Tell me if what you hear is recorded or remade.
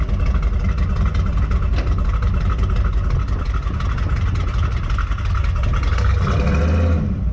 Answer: recorded